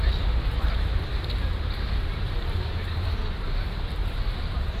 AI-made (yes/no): yes